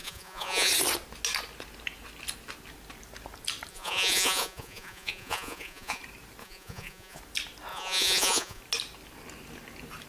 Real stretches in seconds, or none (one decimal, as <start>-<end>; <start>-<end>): 0.7-3.7; 6.0-6.4; 7.2-7.7; 8.6-10.1